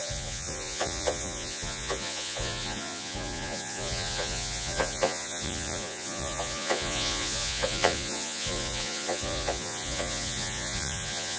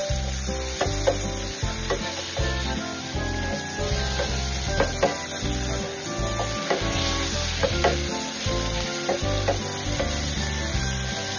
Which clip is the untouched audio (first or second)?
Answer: second